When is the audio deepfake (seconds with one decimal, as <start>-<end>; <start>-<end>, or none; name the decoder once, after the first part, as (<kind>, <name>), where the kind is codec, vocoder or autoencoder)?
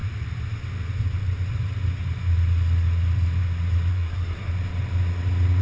3.9-4.5 (codec, SNAC)